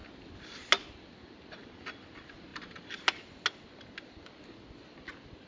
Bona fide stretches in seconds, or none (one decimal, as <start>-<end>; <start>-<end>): 0.0-5.5

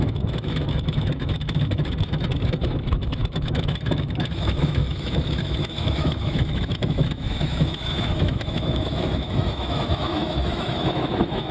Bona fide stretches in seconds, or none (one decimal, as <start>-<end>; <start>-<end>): none

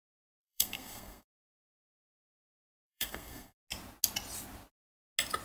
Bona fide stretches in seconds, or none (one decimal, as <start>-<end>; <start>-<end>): 0.0-0.4; 3.6-5.4

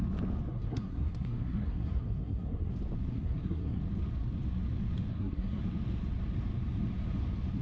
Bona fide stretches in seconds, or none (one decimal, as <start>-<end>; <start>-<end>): 0.0-0.5; 2.7-3.1; 3.8-5.1; 5.6-7.6

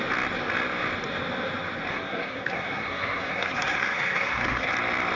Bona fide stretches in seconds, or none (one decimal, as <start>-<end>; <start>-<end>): 0.0-1.9; 4.7-5.2

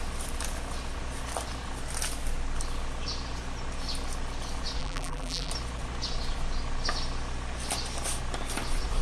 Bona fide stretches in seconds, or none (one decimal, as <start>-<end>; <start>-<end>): 0.0-4.8; 5.5-9.0